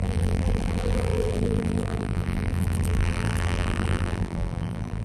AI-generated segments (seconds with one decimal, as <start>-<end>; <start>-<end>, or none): 0.0-5.0